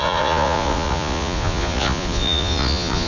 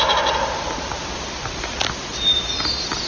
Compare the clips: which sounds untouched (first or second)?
second